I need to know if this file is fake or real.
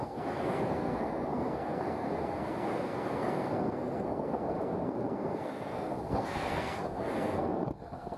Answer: fake